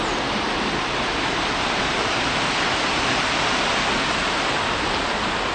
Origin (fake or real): real